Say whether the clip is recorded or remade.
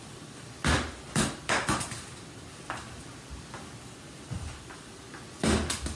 recorded